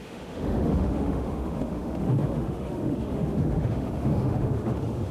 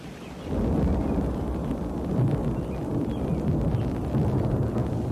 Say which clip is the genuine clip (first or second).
second